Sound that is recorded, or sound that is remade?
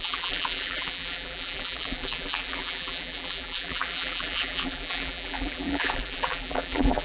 remade